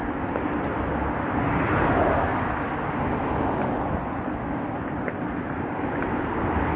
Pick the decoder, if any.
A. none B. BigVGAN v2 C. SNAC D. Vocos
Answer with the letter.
A